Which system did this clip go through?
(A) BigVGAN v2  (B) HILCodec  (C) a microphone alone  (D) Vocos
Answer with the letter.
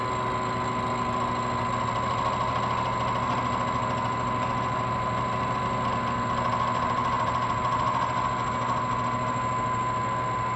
C